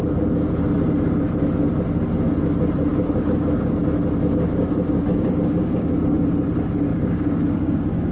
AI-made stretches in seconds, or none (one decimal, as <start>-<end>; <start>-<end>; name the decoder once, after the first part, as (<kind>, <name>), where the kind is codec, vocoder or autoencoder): 2.9-3.7 (codec, DAC); 4.6-6.1; 6.9-8.1